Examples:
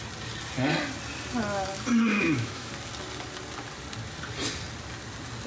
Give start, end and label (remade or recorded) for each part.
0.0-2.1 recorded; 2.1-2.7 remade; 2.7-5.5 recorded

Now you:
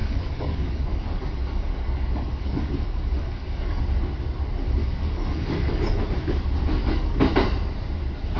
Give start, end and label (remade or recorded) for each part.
0.0-3.8 remade; 3.8-4.8 recorded; 4.8-6.0 remade; 6.0-6.8 recorded; 6.8-7.3 remade; 7.3-8.4 recorded